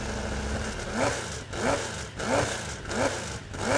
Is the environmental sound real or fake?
real